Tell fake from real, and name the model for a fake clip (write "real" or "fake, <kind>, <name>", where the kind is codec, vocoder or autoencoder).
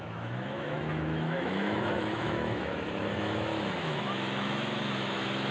fake, autoencoder, DAC-VAE